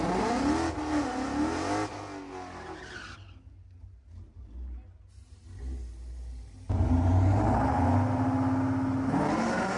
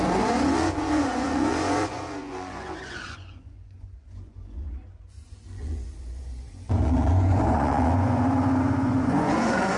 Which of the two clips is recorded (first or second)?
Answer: first